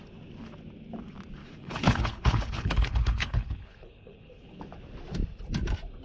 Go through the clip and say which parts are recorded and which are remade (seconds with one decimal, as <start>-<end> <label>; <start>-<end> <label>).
0.0-1.4 recorded; 1.4-4.6 remade; 4.6-6.0 recorded